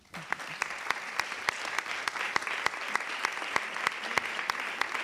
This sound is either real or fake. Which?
real